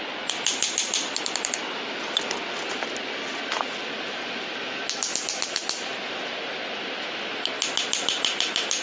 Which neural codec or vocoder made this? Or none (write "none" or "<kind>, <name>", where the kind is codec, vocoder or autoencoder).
none